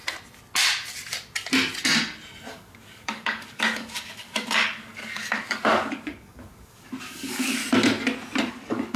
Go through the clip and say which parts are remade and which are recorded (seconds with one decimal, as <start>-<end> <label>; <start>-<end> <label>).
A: 0.0-2.5 recorded; 2.5-7.6 remade; 7.6-8.5 recorded; 8.5-9.0 remade